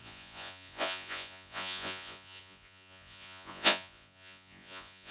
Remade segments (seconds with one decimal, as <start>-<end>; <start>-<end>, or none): 0.0-5.1